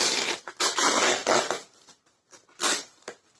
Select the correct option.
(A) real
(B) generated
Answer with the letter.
A